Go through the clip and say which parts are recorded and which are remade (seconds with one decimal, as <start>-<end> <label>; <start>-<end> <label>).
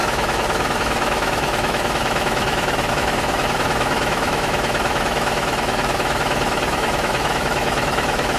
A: 0.0-8.4 remade